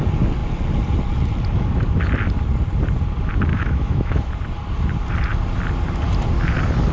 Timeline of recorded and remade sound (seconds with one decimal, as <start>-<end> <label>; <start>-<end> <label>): 0.0-3.5 recorded; 3.5-4.3 remade; 4.3-6.9 recorded